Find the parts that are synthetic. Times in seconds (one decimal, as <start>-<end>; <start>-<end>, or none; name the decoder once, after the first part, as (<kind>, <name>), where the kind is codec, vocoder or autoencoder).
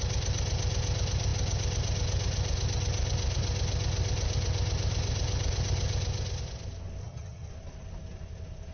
7.0-7.5 (vocoder, HiFi-GAN)